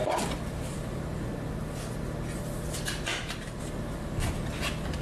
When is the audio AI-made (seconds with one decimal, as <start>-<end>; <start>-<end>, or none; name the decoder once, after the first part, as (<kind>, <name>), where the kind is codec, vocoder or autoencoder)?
0.0-1.0 (vocoder, BigVGAN v2); 3.1-3.6